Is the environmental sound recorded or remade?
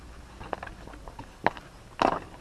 recorded